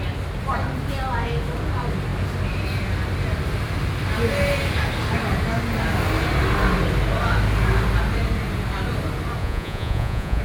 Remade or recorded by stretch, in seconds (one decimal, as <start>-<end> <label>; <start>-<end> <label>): 0.0-9.4 recorded; 9.4-10.4 remade